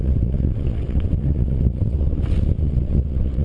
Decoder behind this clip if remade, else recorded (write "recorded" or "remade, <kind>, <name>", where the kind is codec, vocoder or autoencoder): remade, vocoder, WaveNeXt